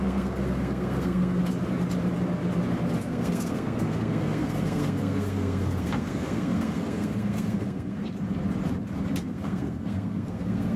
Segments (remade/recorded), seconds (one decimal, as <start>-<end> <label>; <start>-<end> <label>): 0.0-1.4 remade; 1.4-3.0 recorded; 3.0-8.1 remade; 8.1-9.2 recorded; 9.2-10.8 remade